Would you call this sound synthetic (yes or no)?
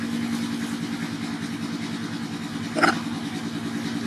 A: no